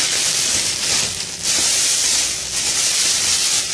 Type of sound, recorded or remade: recorded